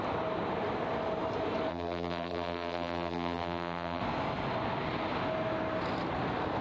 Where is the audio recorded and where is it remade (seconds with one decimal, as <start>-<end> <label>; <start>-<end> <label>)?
0.0-1.7 recorded; 1.7-4.0 remade; 4.0-6.6 recorded